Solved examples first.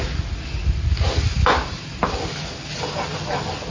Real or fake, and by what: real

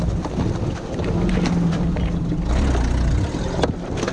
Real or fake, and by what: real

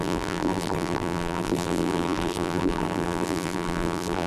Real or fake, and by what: fake, vocoder, BigVGAN v2